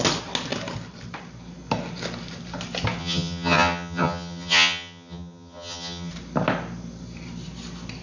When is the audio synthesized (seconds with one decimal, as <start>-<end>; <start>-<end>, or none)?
3.0-6.1